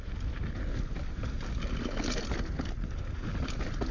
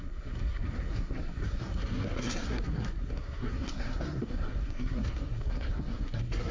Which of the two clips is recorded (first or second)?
first